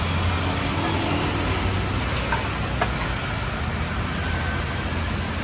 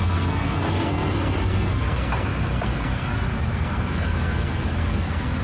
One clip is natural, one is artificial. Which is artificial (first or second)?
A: second